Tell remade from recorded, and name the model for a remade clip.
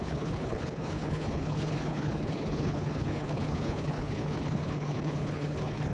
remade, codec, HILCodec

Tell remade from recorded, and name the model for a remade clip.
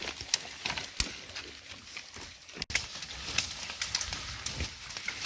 recorded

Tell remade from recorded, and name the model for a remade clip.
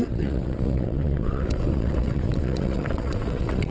remade, vocoder, WaveNeXt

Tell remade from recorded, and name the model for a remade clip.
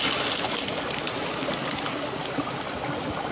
recorded